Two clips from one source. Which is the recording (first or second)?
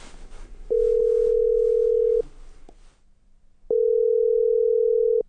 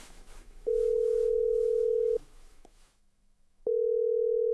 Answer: first